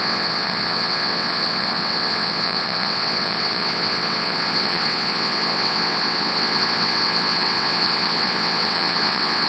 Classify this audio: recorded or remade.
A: remade